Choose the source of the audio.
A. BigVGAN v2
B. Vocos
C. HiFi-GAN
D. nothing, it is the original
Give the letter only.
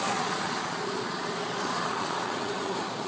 B